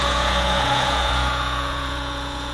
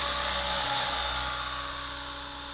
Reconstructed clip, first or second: first